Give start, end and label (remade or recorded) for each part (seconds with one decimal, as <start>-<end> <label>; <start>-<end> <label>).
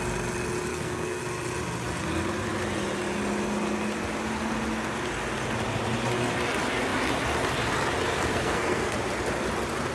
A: 0.0-0.7 recorded; 0.7-1.2 remade; 1.2-8.3 recorded; 8.3-9.0 remade; 9.0-9.9 recorded